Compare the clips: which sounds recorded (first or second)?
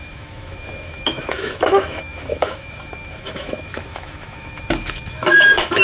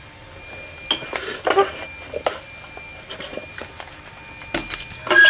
second